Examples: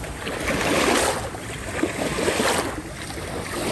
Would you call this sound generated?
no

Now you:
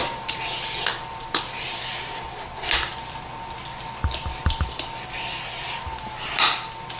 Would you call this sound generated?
no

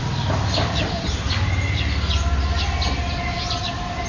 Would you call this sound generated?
no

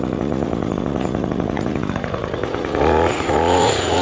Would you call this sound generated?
yes